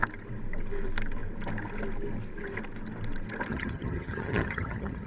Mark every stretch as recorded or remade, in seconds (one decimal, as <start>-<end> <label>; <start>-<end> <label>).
0.0-3.5 recorded; 3.5-5.1 remade